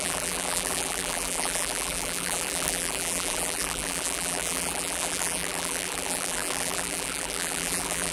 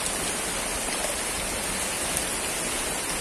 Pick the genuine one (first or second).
second